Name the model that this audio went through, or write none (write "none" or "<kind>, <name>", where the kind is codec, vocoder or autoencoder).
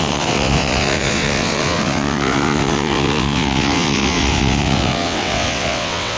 vocoder, WaveNeXt